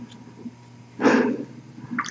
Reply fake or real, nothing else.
real